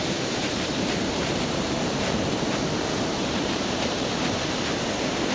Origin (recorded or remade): remade